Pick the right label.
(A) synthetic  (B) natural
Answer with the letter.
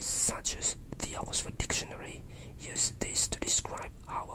A